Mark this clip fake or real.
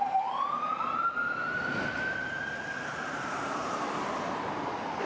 fake